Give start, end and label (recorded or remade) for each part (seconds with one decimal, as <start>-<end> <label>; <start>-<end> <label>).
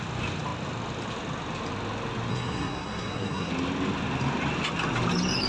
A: 0.0-2.3 recorded; 2.3-3.5 remade; 3.5-5.5 recorded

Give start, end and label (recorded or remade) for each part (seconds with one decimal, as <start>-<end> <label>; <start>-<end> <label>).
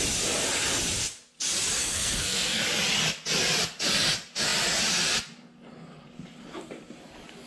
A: 0.0-1.8 recorded; 1.8-2.6 remade; 2.6-7.5 recorded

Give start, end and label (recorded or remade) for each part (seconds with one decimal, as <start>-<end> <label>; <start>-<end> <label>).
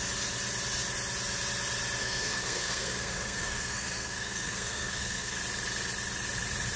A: 0.0-2.0 recorded; 2.0-5.4 remade; 5.4-6.8 recorded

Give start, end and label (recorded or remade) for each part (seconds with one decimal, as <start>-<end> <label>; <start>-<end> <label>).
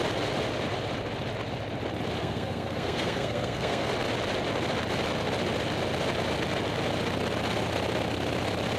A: 0.0-2.2 recorded; 2.2-3.9 remade; 3.9-8.8 recorded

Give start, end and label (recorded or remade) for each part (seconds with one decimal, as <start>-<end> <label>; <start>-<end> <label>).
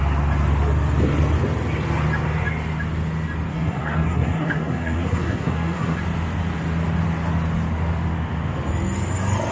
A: 0.0-3.5 recorded; 3.5-6.0 remade; 6.0-9.5 recorded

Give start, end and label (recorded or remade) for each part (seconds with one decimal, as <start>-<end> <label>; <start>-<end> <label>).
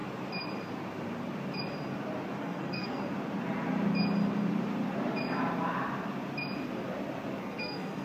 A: 0.0-2.4 recorded; 2.4-3.0 remade; 3.0-7.4 recorded; 7.4-8.0 remade